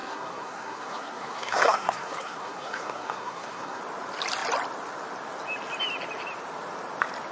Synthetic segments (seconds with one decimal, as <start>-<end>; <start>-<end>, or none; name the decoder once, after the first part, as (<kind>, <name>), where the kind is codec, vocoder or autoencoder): 0.0-3.8 (codec, SNAC)